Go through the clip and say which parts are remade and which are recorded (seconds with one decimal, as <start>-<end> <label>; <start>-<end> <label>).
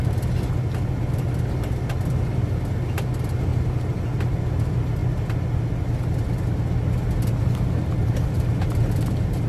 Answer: 0.0-9.5 recorded